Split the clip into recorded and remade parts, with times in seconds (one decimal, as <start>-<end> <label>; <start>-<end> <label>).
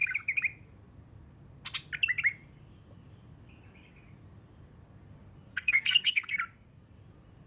0.0-5.5 recorded; 5.5-6.4 remade; 6.4-7.5 recorded